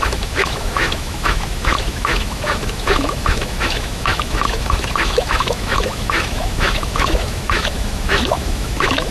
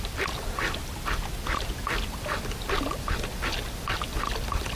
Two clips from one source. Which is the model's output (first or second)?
first